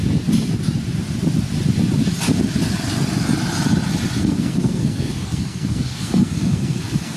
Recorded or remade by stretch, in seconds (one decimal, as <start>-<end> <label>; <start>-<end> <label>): 0.0-4.2 recorded; 4.2-7.2 remade